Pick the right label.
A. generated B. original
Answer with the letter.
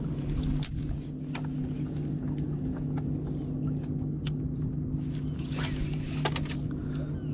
B